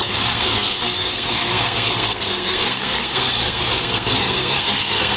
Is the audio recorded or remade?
remade